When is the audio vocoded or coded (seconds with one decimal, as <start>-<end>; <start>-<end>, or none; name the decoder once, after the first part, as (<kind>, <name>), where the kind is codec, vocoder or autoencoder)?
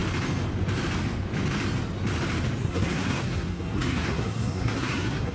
2.6-5.3 (codec, SNAC)